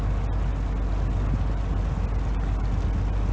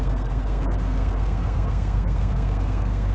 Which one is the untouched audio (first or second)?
first